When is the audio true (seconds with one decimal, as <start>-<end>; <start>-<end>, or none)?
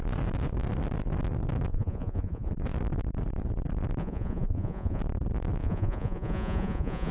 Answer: 0.0-1.7; 2.5-4.0; 5.0-5.6